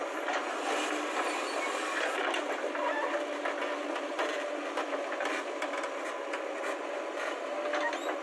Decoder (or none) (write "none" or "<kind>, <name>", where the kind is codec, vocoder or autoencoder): none